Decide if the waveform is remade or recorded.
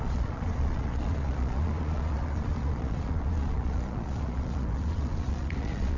remade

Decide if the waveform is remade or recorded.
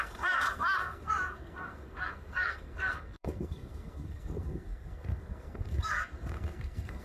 remade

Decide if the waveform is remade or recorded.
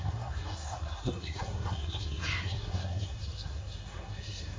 remade